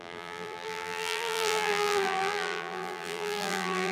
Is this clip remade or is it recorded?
remade